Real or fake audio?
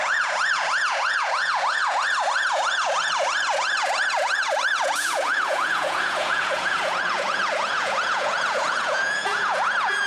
fake